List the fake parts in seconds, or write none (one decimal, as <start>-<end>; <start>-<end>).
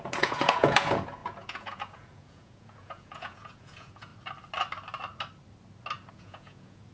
0.0-4.1; 6.1-6.9